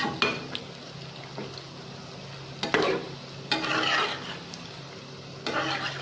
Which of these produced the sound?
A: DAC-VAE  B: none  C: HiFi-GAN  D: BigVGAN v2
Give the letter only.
B